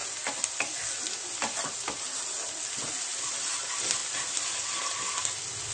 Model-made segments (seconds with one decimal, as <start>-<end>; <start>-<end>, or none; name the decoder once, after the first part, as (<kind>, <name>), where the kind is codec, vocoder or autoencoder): none